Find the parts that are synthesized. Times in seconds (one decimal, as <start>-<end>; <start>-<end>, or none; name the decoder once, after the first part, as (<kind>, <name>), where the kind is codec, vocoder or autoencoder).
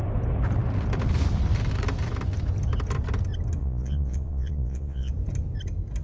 3.6-5.1 (vocoder, Vocos)